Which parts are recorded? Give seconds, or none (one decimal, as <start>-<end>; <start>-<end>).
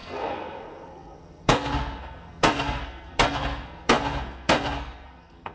none